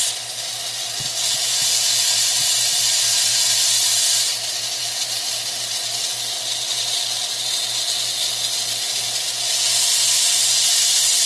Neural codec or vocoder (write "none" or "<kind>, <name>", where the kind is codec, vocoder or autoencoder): none